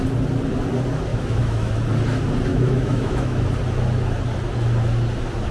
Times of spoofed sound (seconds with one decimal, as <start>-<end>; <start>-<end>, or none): 1.1-1.7; 2.5-3.4